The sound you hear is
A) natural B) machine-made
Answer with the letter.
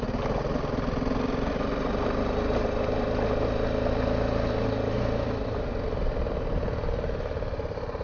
A